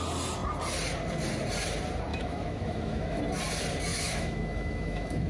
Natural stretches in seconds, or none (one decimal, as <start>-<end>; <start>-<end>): 0.0-2.1; 3.2-3.9